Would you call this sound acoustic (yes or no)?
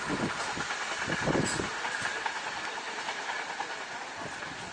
yes